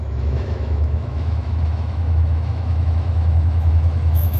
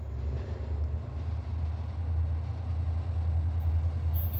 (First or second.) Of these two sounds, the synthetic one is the first